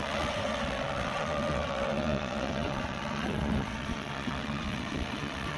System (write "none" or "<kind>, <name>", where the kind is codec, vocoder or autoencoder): vocoder, WaveNeXt